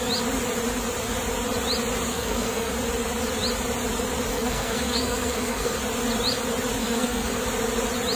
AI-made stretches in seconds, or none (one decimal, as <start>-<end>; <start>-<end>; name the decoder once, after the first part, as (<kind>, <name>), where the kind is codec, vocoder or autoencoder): 2.1-2.7 (codec, SNAC); 4.3-5.8; 6.8-7.4